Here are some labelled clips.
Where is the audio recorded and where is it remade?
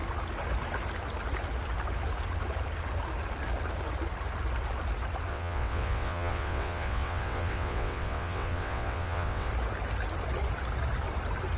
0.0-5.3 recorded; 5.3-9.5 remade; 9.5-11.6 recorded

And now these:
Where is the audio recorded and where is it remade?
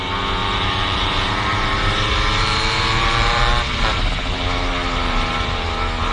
0.0-0.4 recorded; 0.4-4.1 remade; 4.1-6.1 recorded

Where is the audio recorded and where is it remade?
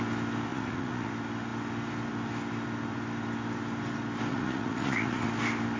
0.0-0.5 recorded; 0.5-1.1 remade; 1.1-4.3 recorded; 4.3-5.3 remade; 5.3-5.8 recorded